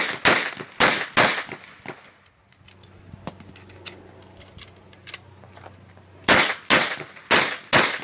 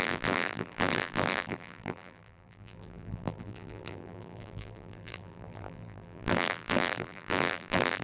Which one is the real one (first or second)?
first